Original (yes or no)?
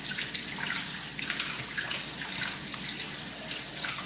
yes